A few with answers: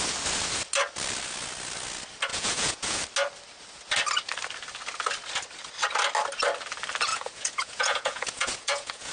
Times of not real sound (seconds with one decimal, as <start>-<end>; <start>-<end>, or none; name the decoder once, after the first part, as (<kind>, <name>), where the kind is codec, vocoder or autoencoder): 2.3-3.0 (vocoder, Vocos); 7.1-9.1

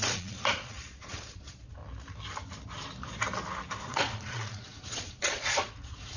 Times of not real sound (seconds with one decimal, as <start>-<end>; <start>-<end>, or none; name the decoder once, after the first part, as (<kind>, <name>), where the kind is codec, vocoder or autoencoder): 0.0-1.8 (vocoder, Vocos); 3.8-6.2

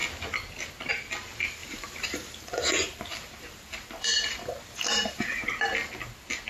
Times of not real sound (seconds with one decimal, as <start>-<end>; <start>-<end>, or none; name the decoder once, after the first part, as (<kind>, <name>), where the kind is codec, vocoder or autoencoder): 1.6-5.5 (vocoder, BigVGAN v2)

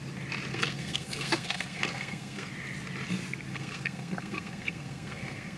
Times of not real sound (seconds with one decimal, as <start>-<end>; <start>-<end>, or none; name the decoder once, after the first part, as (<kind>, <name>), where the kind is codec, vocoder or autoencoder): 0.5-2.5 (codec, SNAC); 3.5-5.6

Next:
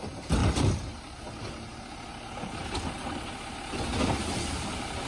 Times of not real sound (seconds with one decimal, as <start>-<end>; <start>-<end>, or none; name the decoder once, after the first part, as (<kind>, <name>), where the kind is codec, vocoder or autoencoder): 0.4-1.2 (vocoder, BigVGAN v2)

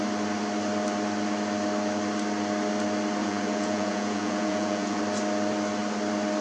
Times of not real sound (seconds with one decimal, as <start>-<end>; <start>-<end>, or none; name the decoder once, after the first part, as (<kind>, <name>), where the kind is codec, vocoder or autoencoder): 3.2-5.0 (vocoder, Vocos)

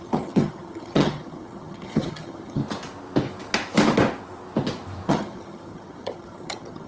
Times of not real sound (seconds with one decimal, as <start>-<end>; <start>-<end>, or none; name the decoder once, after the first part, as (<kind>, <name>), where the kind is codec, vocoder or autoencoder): 0.0-2.6 (vocoder, HiFi-GAN); 5.1-6.9